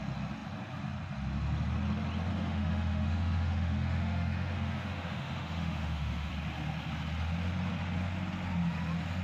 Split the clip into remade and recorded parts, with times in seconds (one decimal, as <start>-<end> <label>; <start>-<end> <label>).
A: 0.0-2.3 recorded; 2.3-6.3 remade; 6.3-9.2 recorded